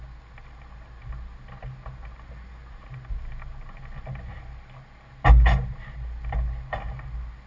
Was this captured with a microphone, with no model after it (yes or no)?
yes